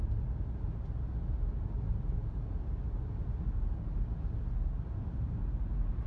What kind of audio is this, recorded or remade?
recorded